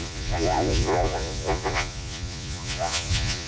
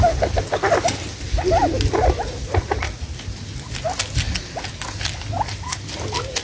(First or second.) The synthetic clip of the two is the first